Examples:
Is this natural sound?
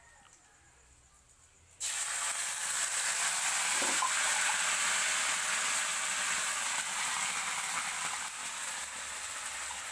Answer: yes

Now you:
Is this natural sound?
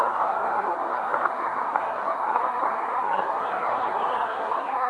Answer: no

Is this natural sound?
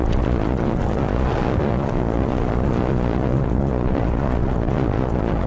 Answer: no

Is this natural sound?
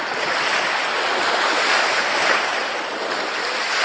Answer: yes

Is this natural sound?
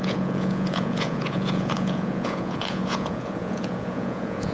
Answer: no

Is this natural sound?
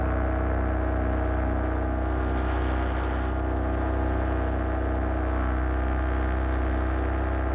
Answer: yes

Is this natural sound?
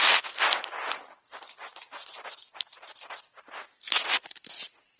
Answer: yes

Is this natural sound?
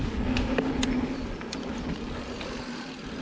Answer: yes